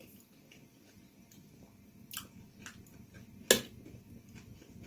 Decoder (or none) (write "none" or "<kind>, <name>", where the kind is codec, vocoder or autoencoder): none